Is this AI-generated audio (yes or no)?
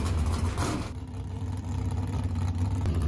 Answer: no